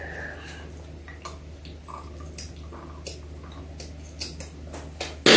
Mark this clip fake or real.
real